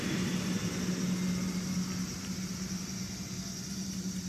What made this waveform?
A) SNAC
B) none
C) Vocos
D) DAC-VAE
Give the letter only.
B